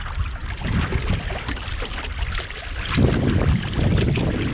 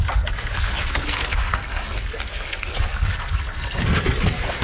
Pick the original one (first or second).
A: first